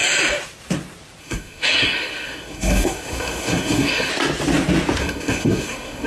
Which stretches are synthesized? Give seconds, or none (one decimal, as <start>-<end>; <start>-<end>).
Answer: 1.2-4.1; 5.0-6.1